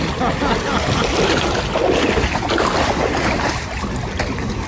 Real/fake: real